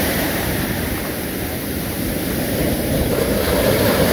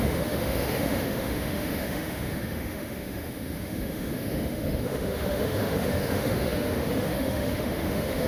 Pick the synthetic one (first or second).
second